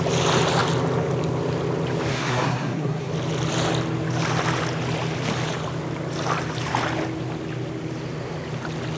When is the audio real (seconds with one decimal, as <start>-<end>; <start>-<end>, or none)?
0.0-2.1; 3.1-9.0